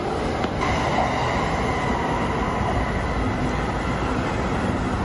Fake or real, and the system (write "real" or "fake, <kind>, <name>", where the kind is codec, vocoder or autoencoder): real